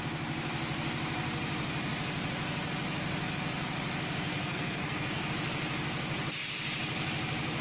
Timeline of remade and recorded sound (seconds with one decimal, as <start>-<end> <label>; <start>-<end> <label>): 0.0-4.3 recorded; 4.3-5.3 remade; 5.3-7.6 recorded